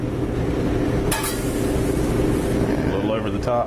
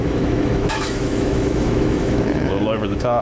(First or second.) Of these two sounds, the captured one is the first